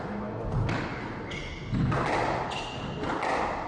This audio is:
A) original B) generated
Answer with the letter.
A